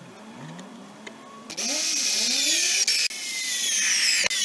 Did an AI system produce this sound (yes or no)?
no